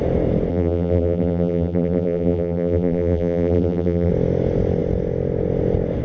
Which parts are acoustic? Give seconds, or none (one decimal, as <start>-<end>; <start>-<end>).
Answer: 0.0-0.5; 4.1-6.0